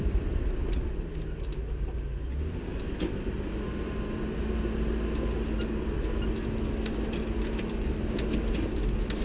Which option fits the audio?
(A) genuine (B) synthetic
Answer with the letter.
A